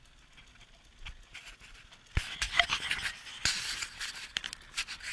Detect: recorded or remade recorded